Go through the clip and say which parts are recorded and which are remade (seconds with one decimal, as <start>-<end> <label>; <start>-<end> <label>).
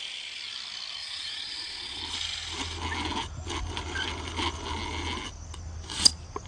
0.0-1.0 recorded; 1.0-2.0 remade; 2.0-6.5 recorded